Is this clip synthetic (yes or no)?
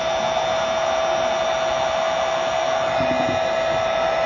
no